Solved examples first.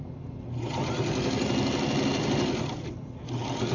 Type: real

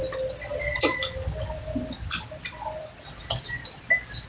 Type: real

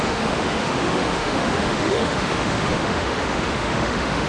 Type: fake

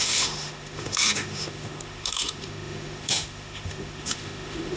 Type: fake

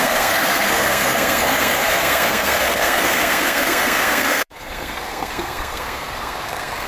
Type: fake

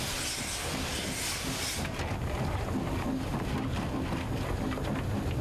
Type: real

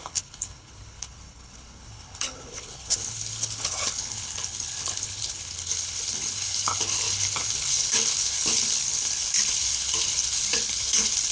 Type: fake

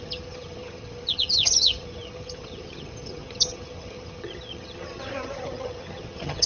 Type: fake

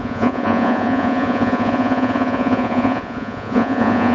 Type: fake